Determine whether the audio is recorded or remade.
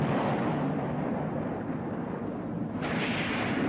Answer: recorded